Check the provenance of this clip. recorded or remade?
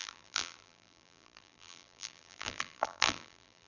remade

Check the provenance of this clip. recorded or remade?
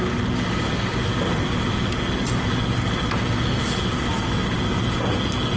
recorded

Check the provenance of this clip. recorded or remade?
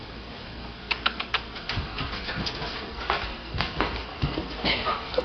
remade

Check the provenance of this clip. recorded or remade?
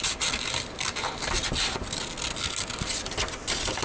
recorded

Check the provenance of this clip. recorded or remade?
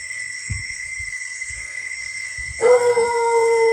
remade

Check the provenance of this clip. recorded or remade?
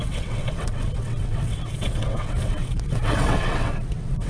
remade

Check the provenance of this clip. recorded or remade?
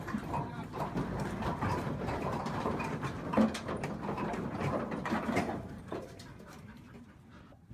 remade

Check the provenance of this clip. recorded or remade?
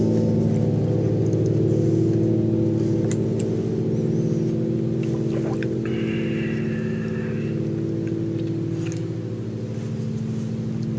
recorded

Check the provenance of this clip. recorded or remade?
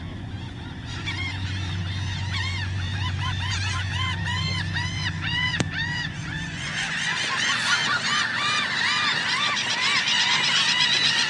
remade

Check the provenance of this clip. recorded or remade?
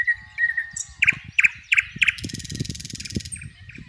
remade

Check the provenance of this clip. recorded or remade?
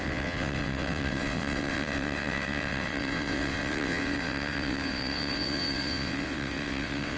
remade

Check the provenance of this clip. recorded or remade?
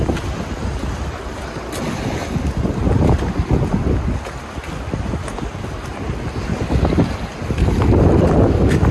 recorded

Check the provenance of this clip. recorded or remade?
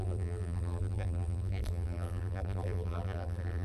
remade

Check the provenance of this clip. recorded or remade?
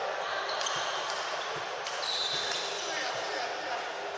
recorded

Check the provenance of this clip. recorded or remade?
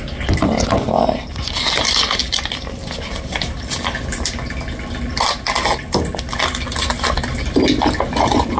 recorded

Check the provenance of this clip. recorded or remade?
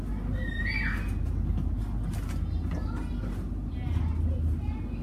recorded